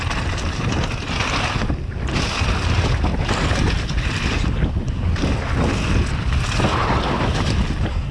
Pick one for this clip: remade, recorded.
recorded